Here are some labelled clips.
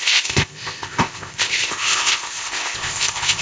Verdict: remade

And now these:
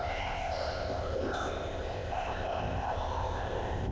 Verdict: remade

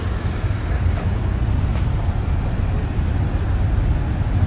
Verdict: recorded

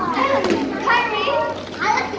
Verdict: recorded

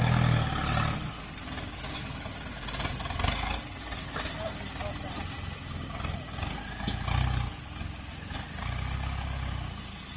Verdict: recorded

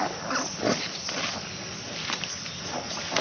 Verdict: recorded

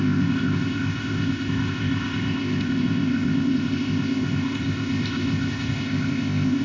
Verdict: remade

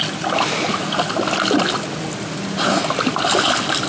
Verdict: recorded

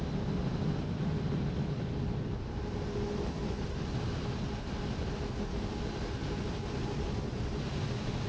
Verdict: recorded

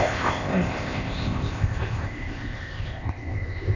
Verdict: remade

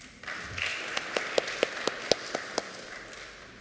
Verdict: recorded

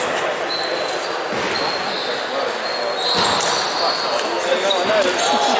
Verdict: recorded